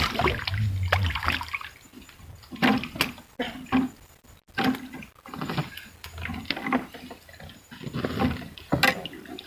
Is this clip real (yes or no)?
yes